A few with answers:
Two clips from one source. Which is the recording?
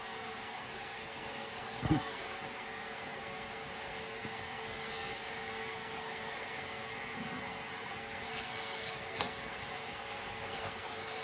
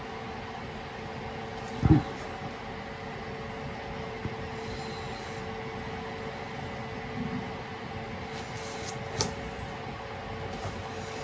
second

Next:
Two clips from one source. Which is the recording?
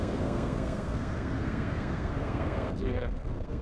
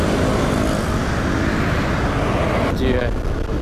second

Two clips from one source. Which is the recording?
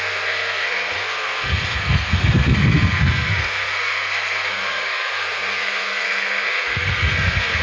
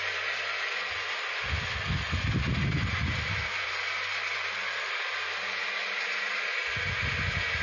second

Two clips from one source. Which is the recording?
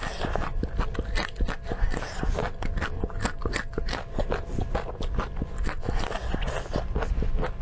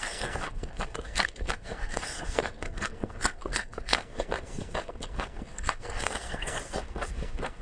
first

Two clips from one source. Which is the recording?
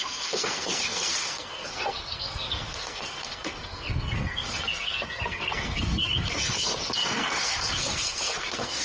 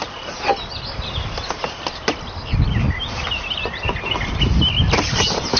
second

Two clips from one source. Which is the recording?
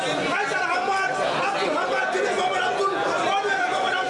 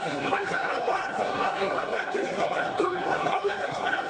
first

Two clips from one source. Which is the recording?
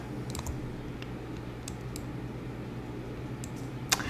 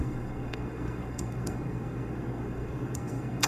first